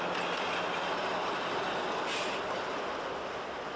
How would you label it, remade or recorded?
recorded